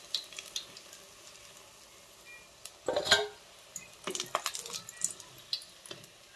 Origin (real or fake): real